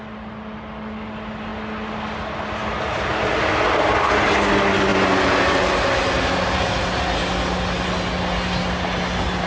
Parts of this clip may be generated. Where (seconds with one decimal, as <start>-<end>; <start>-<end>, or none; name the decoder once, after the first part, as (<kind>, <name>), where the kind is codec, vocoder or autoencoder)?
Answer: none